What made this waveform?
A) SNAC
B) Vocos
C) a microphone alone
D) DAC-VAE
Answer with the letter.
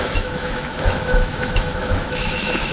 D